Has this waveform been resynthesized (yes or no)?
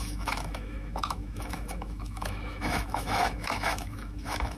yes